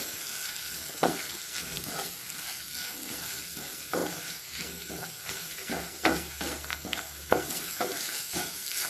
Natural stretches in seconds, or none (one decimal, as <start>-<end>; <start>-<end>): none